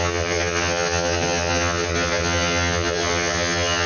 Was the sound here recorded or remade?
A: remade